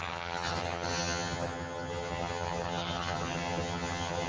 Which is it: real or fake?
fake